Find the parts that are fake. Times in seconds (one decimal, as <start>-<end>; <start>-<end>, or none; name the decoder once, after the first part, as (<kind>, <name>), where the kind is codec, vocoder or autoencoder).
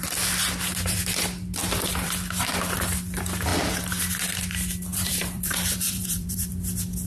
1.6-2.1 (vocoder, BigVGAN v2); 4.9-6.5